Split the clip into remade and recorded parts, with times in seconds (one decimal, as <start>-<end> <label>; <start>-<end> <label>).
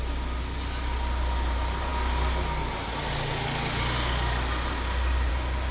0.0-5.7 recorded